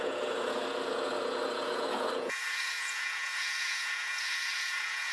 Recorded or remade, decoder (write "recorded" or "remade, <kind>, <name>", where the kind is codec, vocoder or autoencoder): remade, vocoder, Vocos